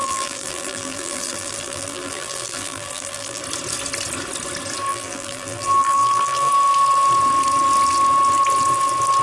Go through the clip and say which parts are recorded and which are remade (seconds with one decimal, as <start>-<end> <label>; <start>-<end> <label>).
0.0-3.4 remade; 3.4-4.9 recorded; 4.9-6.5 remade; 6.5-9.2 recorded